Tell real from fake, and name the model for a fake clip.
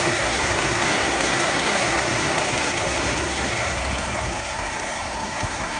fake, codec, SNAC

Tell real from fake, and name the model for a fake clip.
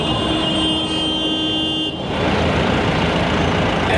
real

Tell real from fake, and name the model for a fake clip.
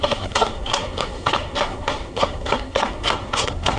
fake, codec, SNAC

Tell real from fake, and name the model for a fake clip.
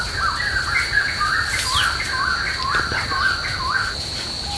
real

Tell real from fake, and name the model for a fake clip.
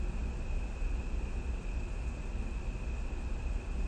real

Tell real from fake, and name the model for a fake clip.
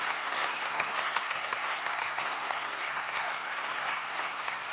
fake, codec, SNAC